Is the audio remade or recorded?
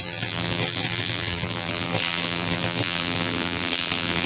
remade